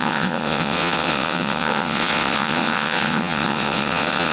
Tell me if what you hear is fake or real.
fake